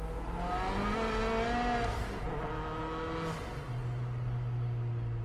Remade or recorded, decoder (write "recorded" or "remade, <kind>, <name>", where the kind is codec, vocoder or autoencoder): recorded